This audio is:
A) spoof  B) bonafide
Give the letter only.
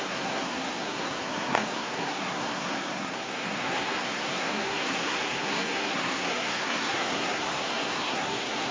A